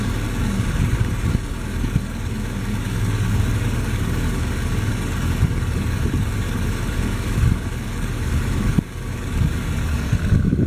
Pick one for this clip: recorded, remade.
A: remade